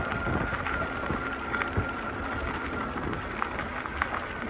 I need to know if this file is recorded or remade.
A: recorded